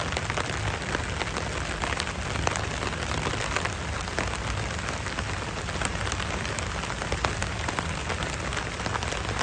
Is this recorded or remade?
recorded